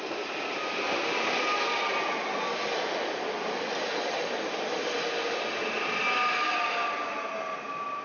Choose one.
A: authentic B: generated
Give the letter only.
A